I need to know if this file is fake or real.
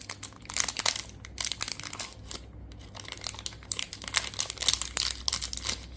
real